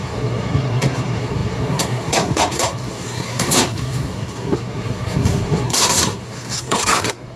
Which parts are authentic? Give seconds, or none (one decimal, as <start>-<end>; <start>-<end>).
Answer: none